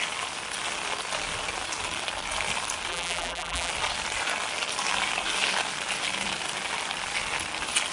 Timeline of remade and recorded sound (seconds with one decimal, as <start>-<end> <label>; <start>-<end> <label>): 0.0-2.9 recorded; 2.9-3.7 remade; 3.7-7.9 recorded